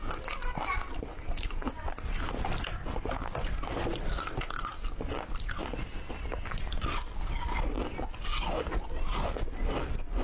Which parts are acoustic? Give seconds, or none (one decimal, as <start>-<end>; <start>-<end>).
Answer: 0.0-10.2